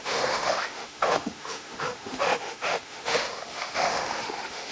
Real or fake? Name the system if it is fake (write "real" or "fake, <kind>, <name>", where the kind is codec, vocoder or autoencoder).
fake, autoencoder, DAC-VAE